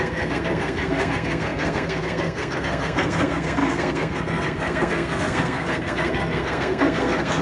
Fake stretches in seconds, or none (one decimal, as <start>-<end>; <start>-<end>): 0.0-7.4